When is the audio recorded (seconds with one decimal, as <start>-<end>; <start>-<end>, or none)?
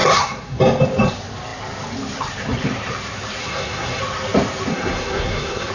0.6-3.4; 4.0-4.7